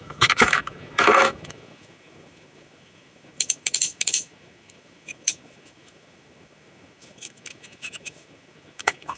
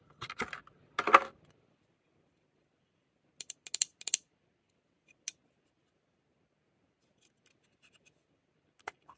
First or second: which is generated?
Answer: first